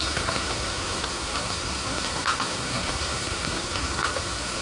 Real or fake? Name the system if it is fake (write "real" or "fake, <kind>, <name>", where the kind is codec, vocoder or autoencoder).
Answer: fake, codec, SNAC